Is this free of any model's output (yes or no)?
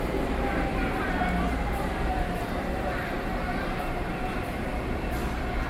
no